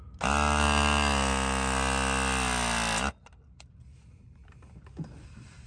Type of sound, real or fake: real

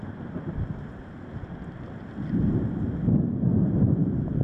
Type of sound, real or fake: real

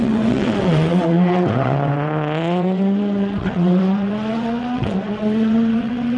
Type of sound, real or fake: fake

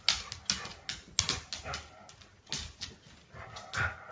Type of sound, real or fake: real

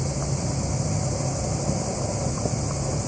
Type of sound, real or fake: real